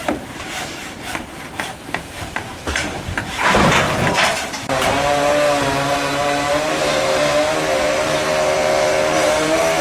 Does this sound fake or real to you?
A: fake